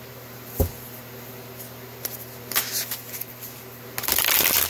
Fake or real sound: real